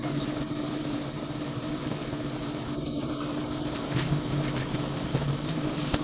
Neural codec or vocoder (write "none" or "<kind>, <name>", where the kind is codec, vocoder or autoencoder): vocoder, BigVGAN v2